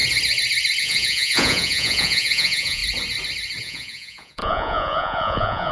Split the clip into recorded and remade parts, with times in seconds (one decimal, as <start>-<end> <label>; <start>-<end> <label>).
0.0-0.8 recorded; 0.8-2.8 remade; 2.8-3.6 recorded; 3.6-5.7 remade